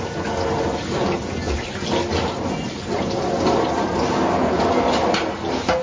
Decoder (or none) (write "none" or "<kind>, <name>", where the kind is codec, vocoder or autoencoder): none